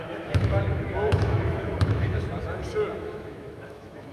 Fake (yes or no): yes